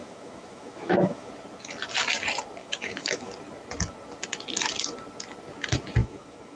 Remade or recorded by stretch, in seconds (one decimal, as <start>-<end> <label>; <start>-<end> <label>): 0.0-1.3 remade; 1.3-2.6 recorded; 2.6-3.3 remade; 3.3-6.0 recorded; 6.0-6.6 remade